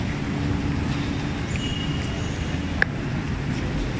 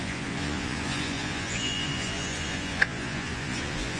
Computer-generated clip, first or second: second